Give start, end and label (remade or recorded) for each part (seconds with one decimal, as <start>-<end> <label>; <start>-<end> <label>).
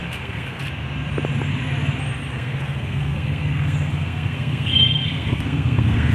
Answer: 0.0-0.6 remade; 0.6-2.3 recorded; 2.3-6.1 remade